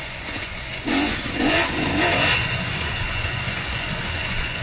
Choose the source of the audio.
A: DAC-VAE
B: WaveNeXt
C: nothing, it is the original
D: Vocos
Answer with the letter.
D